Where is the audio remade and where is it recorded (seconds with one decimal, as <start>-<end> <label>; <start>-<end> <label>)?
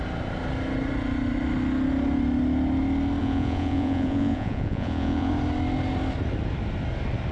0.0-3.2 recorded; 3.2-5.3 remade; 5.3-7.3 recorded